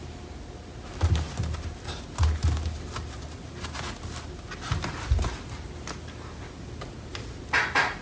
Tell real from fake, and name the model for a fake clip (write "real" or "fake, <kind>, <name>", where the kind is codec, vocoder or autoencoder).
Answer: real